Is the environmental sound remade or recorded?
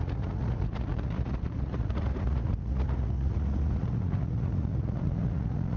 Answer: remade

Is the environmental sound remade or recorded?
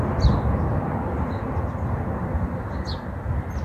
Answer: recorded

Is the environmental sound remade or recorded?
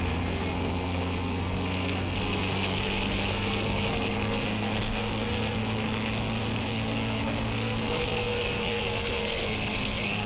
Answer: remade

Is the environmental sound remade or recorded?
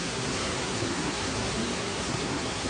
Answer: remade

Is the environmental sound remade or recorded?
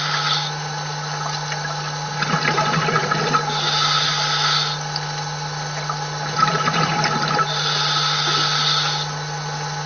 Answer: recorded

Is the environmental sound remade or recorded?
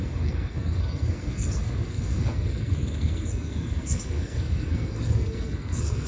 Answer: remade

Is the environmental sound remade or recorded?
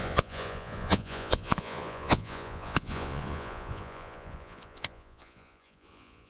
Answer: remade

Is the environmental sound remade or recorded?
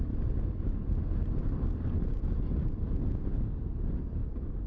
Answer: recorded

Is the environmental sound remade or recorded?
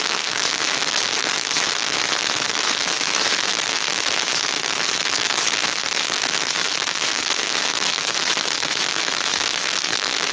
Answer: remade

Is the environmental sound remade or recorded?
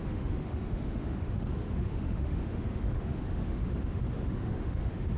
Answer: remade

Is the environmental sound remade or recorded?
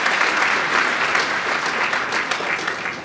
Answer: recorded